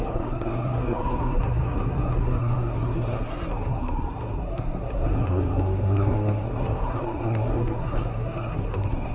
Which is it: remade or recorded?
remade